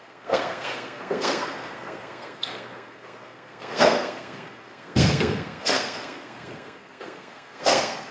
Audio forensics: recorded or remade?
remade